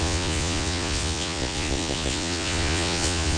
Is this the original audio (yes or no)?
no